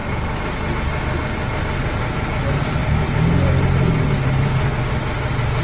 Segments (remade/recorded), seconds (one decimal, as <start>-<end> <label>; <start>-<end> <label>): 0.0-5.6 recorded